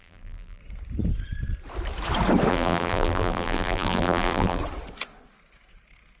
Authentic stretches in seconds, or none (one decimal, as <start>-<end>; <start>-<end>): 0.6-2.5; 4.6-6.2

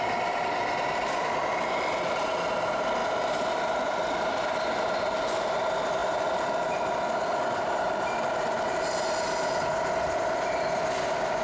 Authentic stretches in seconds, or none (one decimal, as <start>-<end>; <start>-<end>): 0.0-11.4

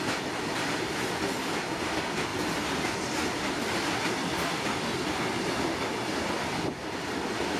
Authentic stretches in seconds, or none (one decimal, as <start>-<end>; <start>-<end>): 0.0-7.6

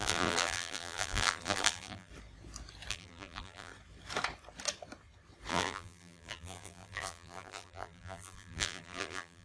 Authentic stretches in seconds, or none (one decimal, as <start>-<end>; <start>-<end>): 2.1-2.9; 3.7-5.5

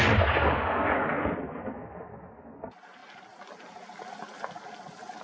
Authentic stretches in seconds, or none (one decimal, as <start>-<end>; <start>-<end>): 0.0-5.2

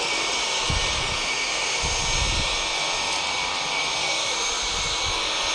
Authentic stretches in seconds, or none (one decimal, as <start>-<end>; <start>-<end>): 0.0-5.5

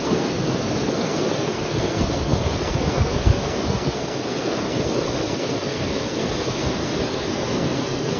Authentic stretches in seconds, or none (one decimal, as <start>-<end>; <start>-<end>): none